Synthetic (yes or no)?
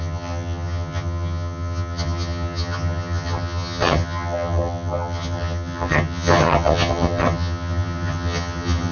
yes